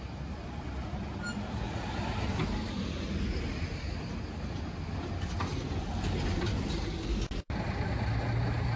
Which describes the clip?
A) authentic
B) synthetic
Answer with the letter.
A